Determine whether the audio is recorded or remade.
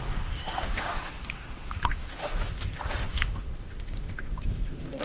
remade